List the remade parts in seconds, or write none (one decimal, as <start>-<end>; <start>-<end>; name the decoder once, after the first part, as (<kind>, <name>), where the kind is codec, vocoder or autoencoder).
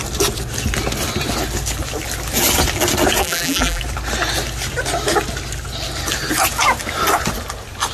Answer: 3.2-3.8 (vocoder, BigVGAN v2)